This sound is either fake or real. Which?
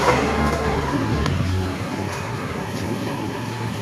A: fake